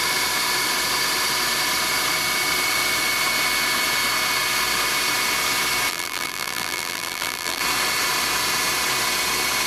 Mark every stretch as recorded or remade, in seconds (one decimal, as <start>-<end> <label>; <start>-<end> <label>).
0.0-5.9 recorded; 5.9-7.6 remade; 7.6-9.7 recorded